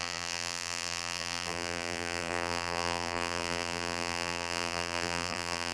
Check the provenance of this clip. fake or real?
fake